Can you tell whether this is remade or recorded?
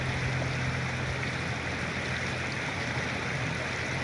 recorded